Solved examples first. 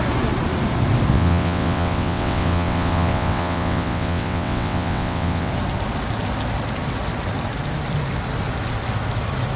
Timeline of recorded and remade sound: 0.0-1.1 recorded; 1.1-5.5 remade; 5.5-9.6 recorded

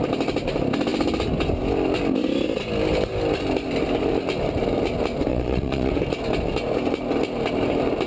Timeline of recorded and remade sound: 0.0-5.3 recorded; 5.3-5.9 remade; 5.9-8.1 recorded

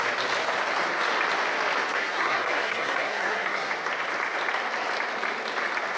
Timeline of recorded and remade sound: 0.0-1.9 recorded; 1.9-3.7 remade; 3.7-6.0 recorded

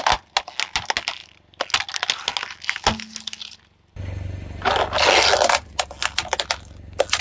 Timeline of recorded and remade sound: 0.0-7.2 recorded

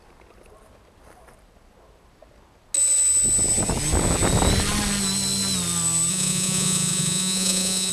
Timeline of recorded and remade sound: 0.0-6.1 recorded; 6.1-7.9 remade